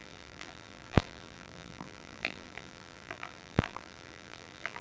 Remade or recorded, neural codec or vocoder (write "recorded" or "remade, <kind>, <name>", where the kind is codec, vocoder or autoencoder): remade, vocoder, BigVGAN v2